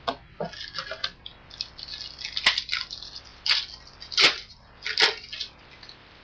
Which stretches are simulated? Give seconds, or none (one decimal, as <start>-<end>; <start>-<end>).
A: none